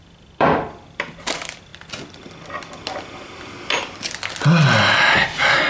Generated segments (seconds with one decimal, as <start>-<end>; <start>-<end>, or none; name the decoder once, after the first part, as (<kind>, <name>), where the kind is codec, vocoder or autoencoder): 0.0-1.7 (vocoder, BigVGAN v2); 4.9-5.7